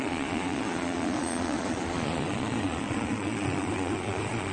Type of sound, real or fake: fake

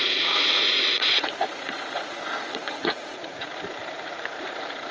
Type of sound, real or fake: fake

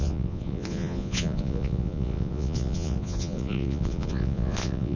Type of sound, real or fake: fake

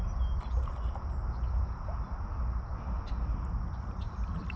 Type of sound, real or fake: real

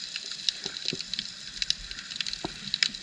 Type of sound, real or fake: real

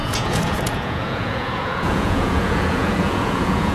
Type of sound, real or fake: fake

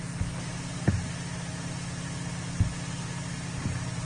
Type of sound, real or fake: real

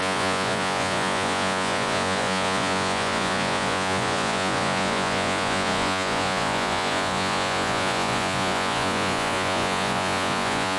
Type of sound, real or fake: fake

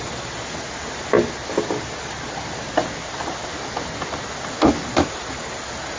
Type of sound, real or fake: real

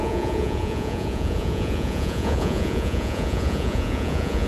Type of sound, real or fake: fake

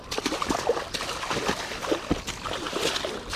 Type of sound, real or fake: real